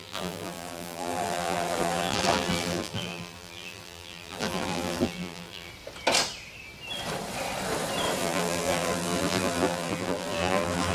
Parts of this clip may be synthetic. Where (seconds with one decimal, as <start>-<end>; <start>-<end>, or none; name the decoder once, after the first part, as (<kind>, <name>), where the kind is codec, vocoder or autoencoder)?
0.0-5.7 (vocoder, BigVGAN v2); 8.2-10.9